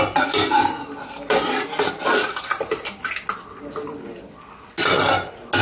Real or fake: real